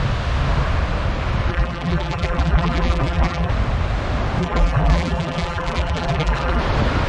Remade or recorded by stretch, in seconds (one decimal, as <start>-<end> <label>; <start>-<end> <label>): 0.0-1.5 recorded; 1.5-3.5 remade; 3.5-4.4 recorded; 4.4-6.6 remade; 6.6-7.1 recorded